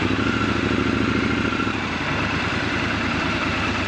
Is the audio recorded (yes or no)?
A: yes